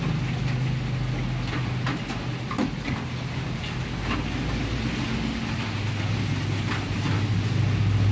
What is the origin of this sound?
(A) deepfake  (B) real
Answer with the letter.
B